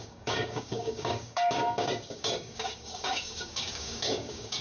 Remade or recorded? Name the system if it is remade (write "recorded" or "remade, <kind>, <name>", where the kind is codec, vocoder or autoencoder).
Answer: remade, codec, DAC